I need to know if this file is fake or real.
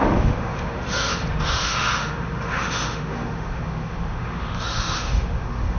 fake